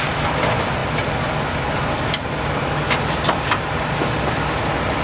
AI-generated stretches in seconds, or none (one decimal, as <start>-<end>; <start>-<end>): none